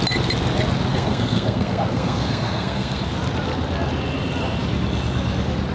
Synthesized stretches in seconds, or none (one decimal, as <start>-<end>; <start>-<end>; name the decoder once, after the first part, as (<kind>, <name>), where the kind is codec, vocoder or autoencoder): 0.9-3.0 (codec, SNAC)